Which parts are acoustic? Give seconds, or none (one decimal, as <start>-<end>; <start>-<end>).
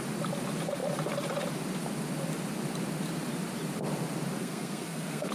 0.0-4.4